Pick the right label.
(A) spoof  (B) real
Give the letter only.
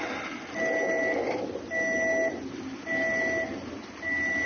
B